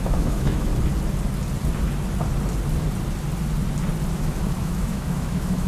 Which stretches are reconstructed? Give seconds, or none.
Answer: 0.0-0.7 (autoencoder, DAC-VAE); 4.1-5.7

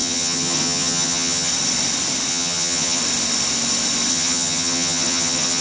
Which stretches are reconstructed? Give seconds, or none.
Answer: 0.0-1.5 (vocoder, HiFi-GAN); 2.3-3.0; 4.1-5.6

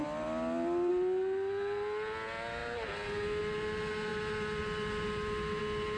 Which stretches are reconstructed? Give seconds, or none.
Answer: none

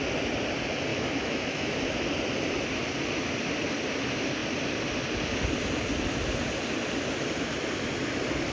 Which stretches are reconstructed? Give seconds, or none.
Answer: 0.9-1.7 (autoencoder, DAC-VAE)

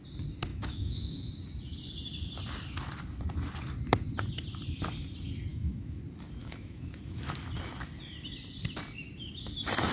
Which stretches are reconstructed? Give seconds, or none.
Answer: 0.5-1.3 (autoencoder, DAC-VAE); 5.5-6.0; 6.4-7.2